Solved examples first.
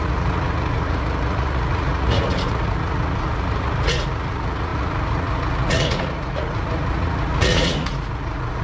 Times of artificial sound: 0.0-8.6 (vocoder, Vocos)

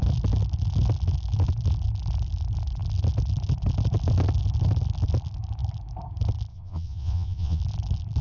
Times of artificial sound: 6.5-7.6 (vocoder, Vocos)

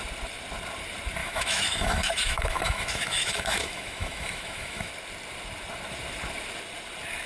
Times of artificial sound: 1.2-4.9 (autoencoder, DAC-VAE)

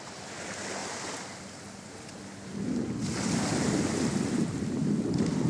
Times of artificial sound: none